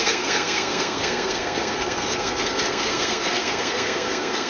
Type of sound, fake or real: fake